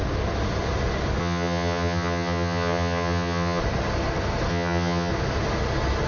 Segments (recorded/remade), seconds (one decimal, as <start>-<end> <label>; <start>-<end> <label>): 0.0-1.2 recorded; 1.2-3.6 remade; 3.6-4.5 recorded; 4.5-5.1 remade; 5.1-6.1 recorded